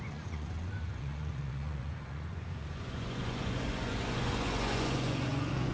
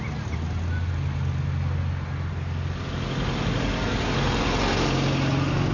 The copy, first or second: first